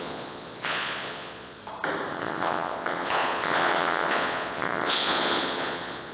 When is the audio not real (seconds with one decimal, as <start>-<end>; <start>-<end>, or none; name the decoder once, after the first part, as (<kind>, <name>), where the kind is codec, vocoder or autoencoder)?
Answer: 0.0-1.6 (vocoder, Vocos); 2.1-6.1

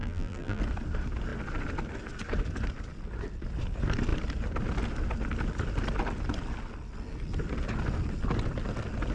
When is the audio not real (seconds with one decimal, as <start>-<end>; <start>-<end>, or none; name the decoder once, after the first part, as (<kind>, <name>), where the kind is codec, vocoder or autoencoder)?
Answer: 0.0-0.6 (vocoder, BigVGAN v2)

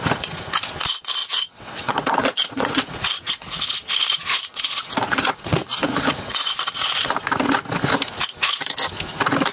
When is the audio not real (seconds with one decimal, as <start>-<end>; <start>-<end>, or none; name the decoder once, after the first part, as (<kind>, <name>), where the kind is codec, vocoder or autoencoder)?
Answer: 1.2-3.9 (vocoder, WaveNeXt); 4.5-7.1

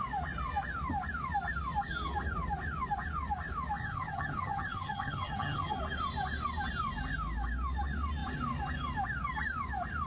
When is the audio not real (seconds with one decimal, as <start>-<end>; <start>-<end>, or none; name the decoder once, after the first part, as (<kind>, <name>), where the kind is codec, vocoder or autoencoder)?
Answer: 3.8-5.8 (vocoder, HiFi-GAN)

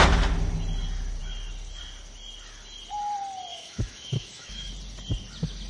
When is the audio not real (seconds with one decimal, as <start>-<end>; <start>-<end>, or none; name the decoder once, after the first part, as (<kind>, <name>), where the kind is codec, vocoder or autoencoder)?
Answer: 3.5-4.7 (autoencoder, DAC-VAE)

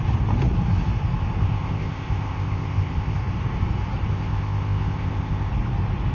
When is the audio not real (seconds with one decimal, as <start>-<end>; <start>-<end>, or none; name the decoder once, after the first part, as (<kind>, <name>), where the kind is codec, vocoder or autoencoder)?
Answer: 1.4-3.2 (codec, ZipCodec); 4.1-5.5

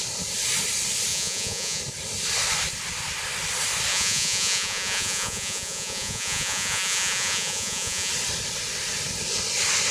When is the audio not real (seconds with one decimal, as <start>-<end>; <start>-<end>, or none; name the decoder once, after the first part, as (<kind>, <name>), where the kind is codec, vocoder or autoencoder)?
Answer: 1.1-1.8 (vocoder, Vocos); 3.9-8.1

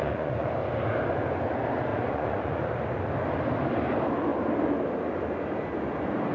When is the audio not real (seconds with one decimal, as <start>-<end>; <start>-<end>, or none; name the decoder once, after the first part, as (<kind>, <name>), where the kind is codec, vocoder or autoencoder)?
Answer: 0.0-0.5 (vocoder, Vocos); 1.9-2.6